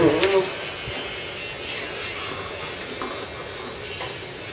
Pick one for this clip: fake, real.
real